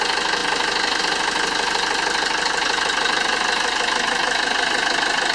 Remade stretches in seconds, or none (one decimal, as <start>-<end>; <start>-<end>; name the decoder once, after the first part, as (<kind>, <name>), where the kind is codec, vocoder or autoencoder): none